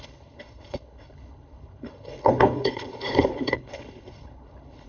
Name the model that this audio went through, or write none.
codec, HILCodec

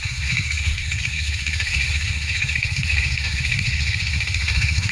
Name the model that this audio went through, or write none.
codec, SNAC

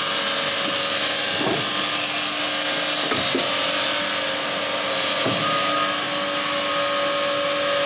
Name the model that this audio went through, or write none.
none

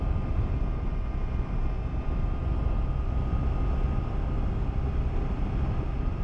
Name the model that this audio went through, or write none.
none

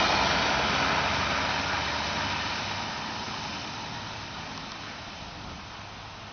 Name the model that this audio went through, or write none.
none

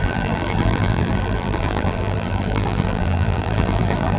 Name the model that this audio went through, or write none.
vocoder, BigVGAN v2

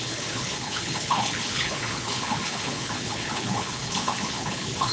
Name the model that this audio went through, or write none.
codec, HILCodec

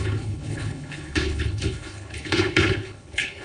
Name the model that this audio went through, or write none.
codec, HILCodec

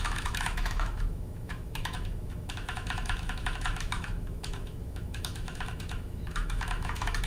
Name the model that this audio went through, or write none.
autoencoder, DAC-VAE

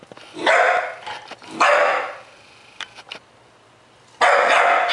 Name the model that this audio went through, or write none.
none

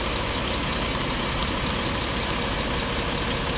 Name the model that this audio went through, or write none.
none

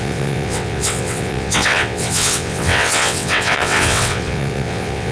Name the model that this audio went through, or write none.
vocoder, WaveNeXt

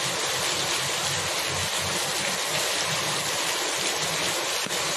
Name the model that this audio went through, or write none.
none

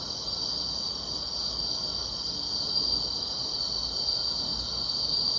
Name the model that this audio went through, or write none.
none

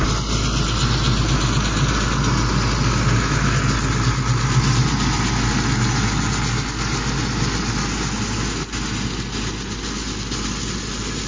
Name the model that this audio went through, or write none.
none